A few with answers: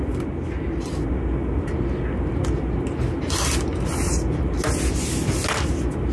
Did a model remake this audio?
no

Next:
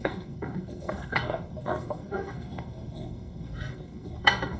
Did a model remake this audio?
yes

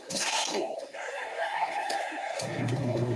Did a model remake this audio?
yes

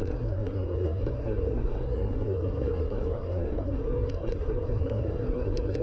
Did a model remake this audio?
yes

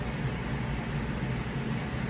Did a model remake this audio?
no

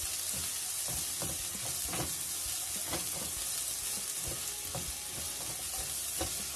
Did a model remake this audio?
no